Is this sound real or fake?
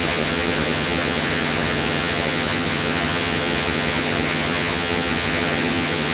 fake